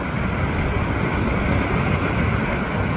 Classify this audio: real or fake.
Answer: real